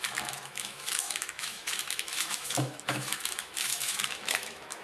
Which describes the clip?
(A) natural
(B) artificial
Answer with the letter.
B